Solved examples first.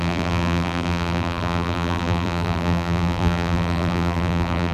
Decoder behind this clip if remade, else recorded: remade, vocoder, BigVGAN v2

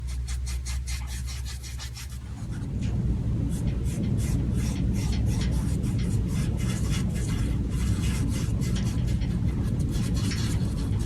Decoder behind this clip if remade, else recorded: recorded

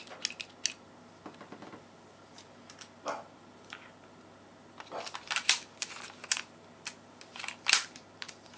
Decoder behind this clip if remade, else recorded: recorded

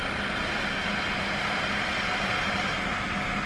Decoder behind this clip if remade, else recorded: recorded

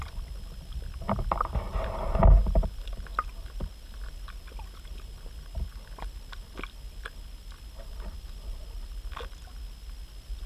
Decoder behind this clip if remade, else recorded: recorded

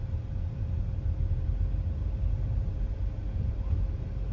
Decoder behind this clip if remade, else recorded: recorded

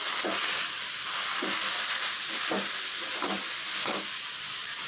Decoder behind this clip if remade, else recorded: recorded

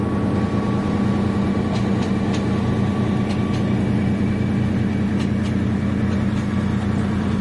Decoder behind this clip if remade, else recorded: recorded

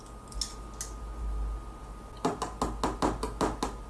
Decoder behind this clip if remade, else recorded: recorded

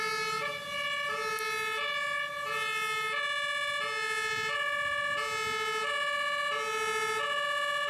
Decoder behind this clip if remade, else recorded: recorded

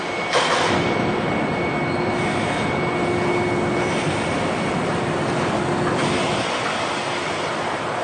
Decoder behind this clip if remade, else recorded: remade, vocoder, BigVGAN v2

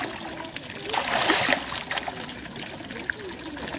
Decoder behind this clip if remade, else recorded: recorded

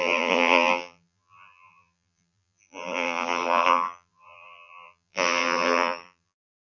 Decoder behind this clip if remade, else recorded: remade, vocoder, BigVGAN v2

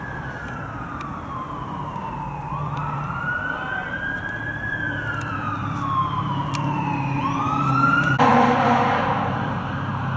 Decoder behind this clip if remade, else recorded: remade, vocoder, BigVGAN v2